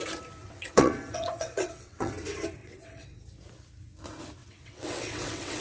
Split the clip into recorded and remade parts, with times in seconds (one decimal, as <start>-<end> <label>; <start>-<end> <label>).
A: 0.0-0.4 recorded; 0.4-2.1 remade; 2.1-2.6 recorded; 2.6-3.2 remade; 3.2-4.4 recorded; 4.4-5.6 remade